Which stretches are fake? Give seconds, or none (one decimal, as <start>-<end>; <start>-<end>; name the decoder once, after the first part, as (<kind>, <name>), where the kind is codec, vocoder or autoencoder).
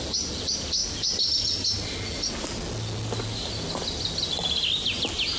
none